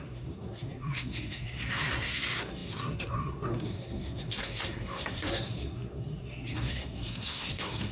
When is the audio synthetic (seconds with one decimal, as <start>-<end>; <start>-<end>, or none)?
0.0-7.9